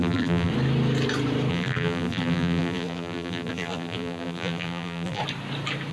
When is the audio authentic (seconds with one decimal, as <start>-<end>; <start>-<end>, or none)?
0.5-1.5; 5.2-5.9